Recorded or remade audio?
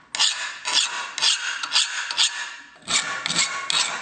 recorded